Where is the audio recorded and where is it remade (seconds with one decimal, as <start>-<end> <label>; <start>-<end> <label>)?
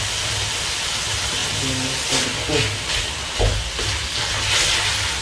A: 0.0-5.2 recorded